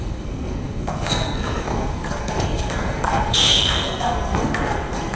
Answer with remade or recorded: remade